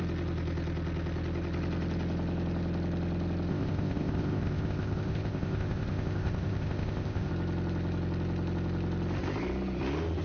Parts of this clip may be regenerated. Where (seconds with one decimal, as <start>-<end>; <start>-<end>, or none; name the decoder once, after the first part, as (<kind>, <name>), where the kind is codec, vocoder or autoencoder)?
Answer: 3.5-7.3 (codec, ZipCodec)

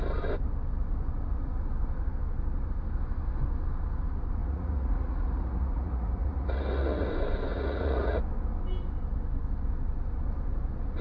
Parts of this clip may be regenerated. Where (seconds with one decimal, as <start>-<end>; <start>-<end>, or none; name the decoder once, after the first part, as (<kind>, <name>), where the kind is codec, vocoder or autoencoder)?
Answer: 4.4-7.1 (vocoder, Vocos); 7.5-8.2

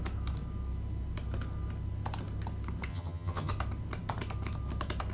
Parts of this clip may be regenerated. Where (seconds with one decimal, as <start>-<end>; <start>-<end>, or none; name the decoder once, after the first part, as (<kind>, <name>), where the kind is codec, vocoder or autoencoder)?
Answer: 2.9-3.5 (vocoder, HiFi-GAN)

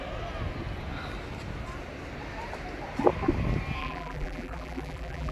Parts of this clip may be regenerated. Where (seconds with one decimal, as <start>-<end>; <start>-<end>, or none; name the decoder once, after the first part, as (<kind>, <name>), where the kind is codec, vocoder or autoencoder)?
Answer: 3.8-5.3 (vocoder, BigVGAN v2)

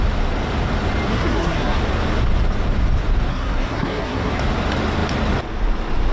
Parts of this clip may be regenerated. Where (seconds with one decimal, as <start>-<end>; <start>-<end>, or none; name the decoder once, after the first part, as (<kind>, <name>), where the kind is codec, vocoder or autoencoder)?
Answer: 1.1-1.8 (codec, SNAC); 3.3-4.3

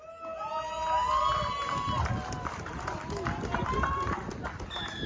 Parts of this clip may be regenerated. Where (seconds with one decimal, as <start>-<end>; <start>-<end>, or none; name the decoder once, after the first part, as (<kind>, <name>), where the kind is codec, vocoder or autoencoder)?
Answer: none

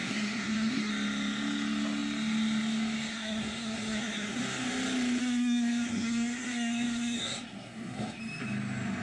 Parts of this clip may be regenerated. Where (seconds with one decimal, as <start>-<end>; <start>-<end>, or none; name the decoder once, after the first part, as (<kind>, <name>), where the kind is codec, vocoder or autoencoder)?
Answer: 0.0-0.9 (codec, SNAC); 3.1-4.4; 5.2-8.2

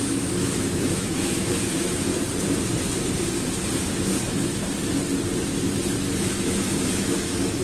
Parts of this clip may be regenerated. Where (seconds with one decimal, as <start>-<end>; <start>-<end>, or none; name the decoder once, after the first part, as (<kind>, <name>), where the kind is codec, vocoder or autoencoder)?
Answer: 0.0-2.1 (autoencoder, DAC-VAE); 6.2-7.6